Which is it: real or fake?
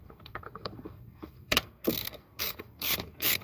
fake